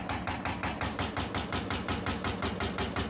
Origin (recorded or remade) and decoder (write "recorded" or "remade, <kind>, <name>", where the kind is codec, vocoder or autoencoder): recorded